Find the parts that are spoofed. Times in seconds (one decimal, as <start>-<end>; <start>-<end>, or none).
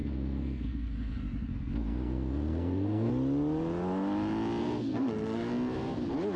0.0-3.1; 4.6-5.5